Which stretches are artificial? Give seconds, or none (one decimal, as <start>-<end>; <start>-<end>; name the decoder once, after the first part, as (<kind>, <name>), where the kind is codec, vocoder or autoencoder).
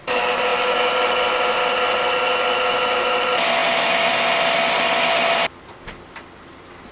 none